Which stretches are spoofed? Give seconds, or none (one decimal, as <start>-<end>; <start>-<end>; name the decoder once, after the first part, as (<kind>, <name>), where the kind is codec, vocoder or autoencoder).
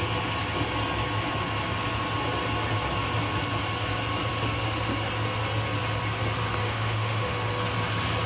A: 6.6-7.3 (autoencoder, DAC-VAE)